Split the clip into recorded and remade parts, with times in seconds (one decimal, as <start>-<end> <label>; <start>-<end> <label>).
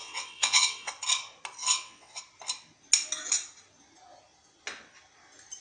0.0-0.9 remade; 0.9-1.6 recorded; 1.6-2.2 remade; 2.2-5.6 recorded